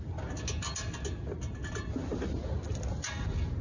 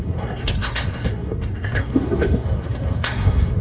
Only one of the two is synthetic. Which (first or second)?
second